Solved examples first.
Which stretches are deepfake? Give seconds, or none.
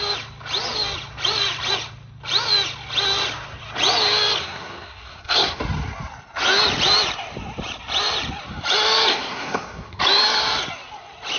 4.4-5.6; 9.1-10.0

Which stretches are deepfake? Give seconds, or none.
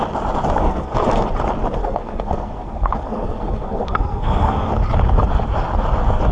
0.6-1.2; 1.8-4.7